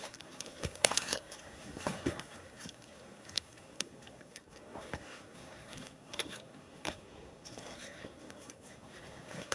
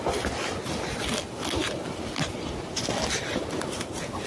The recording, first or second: second